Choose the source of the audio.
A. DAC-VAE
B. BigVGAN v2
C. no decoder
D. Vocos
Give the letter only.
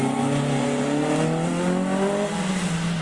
C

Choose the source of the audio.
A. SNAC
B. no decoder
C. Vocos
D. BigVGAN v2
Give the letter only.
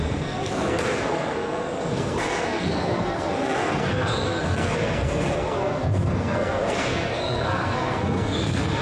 A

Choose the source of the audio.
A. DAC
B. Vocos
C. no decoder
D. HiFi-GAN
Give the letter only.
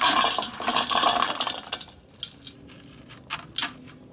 C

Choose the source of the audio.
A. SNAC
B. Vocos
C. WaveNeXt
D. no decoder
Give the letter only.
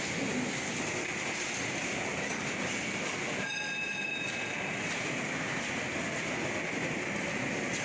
D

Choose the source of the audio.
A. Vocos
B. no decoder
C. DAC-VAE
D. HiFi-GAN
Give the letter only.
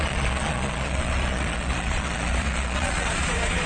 A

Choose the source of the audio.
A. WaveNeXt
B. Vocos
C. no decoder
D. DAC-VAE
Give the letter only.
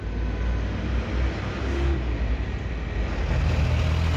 C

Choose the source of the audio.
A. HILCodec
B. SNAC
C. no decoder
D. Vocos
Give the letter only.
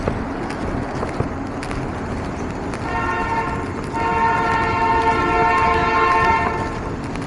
C